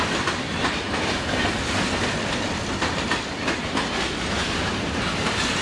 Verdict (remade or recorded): recorded